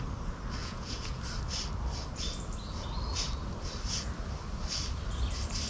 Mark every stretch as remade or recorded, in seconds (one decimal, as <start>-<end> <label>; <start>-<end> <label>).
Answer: 0.0-0.6 recorded; 0.6-1.2 remade; 1.2-5.7 recorded